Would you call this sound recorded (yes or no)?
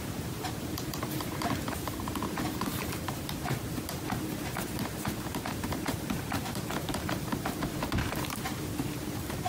no